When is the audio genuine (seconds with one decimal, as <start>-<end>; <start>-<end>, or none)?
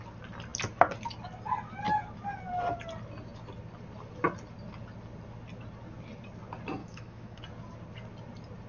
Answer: 0.0-6.8; 7.4-8.7